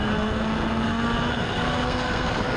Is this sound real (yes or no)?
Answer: no